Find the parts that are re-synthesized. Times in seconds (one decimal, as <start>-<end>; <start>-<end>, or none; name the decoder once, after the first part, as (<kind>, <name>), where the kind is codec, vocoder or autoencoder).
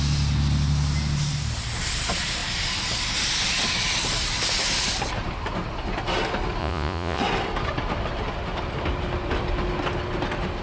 6.6-7.2 (vocoder, Vocos)